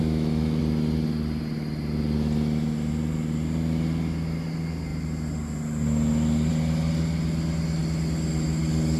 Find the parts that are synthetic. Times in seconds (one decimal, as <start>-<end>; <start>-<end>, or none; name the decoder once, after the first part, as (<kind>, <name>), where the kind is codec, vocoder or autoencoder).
0.0-0.6 (autoencoder, DAC-VAE)